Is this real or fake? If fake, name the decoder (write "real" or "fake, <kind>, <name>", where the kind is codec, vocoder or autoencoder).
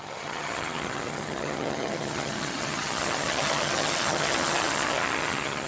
fake, vocoder, HiFi-GAN